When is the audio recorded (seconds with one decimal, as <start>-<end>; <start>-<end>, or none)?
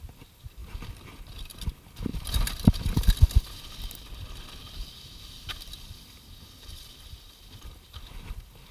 0.0-8.7